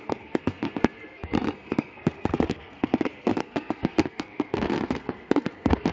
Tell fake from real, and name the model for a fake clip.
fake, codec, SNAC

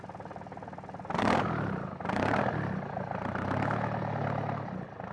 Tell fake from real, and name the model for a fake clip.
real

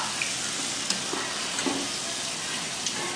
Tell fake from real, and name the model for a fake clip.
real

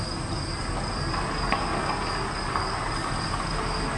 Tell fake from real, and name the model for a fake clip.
real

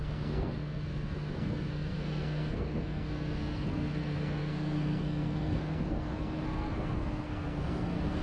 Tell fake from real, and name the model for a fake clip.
fake, codec, SNAC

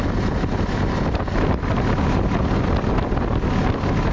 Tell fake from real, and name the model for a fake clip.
real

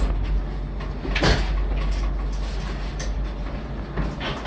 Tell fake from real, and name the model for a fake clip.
real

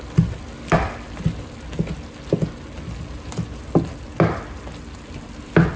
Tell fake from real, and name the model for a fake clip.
real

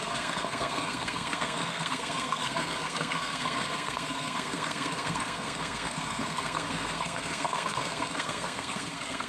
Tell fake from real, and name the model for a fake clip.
fake, codec, SNAC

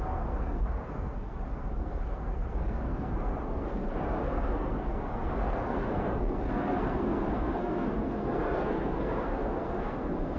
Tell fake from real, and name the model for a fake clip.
fake, codec, SNAC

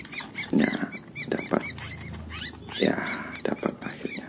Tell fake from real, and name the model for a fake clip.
real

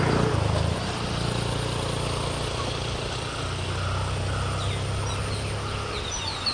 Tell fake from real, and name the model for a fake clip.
real